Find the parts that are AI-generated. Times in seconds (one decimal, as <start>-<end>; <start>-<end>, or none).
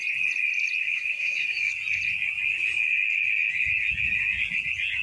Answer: 0.8-1.7